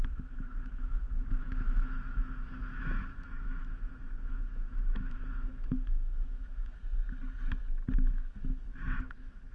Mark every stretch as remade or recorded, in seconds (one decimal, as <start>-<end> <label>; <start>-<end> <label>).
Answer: 0.0-6.8 remade; 6.8-8.1 recorded; 8.1-9.5 remade

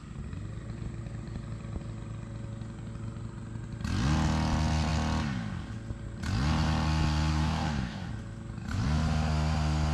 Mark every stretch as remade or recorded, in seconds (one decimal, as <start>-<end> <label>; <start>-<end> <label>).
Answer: 0.0-7.3 recorded; 7.3-8.1 remade; 8.1-9.9 recorded